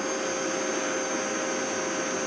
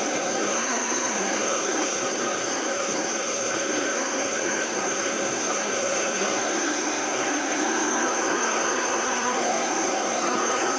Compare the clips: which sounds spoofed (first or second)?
second